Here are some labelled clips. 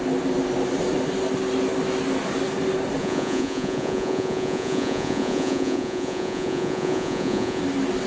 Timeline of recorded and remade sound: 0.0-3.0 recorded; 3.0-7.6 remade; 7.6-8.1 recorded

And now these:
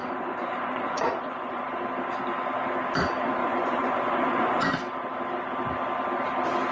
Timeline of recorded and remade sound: 0.0-1.6 remade; 1.6-3.4 recorded; 3.4-4.7 remade; 4.7-6.7 recorded

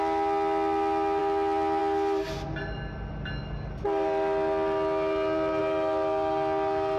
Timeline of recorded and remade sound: 0.0-7.0 recorded

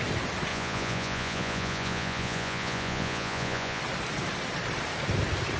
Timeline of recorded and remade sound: 0.0-0.5 recorded; 0.5-3.8 remade; 3.8-5.6 recorded